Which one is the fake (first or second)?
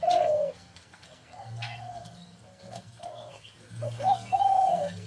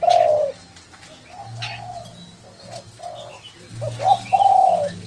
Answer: first